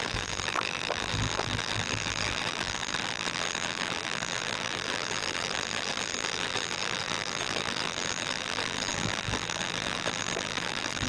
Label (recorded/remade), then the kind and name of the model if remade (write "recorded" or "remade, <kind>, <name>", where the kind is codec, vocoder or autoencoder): remade, vocoder, BigVGAN v2